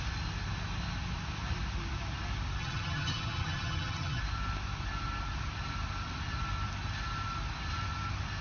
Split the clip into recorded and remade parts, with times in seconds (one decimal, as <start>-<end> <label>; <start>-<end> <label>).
0.0-2.6 recorded; 2.6-4.2 remade; 4.2-8.4 recorded